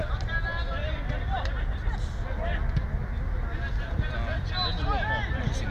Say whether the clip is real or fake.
real